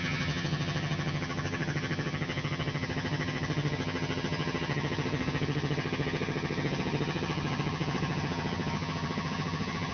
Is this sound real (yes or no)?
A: no